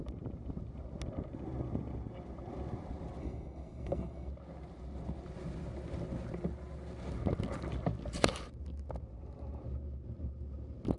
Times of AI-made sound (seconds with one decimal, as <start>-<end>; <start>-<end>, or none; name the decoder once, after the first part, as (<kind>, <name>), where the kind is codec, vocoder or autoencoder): 3.2-4.3 (codec, SNAC)